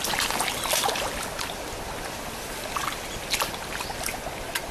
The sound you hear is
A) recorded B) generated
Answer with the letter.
A